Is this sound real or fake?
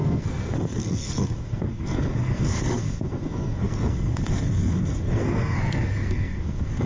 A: fake